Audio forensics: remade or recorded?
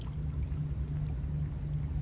recorded